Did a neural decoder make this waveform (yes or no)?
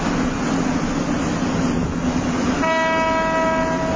no